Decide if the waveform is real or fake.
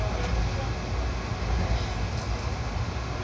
real